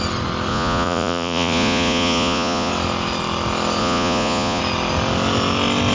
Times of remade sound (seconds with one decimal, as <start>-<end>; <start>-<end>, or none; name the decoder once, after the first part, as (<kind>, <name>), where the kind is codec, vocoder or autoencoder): 0.5-2.7 (vocoder, Vocos); 3.8-4.6